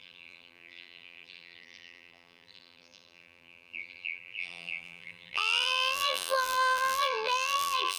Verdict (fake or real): fake